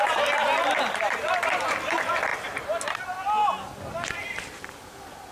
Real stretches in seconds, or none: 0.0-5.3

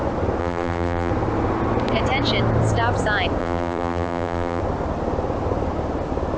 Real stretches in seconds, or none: 0.0-0.4; 1.1-3.4; 4.6-6.4

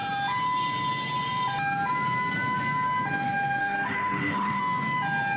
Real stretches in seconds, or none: 0.0-3.6; 4.6-5.4

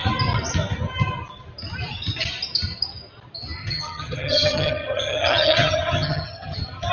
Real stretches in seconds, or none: 0.0-3.6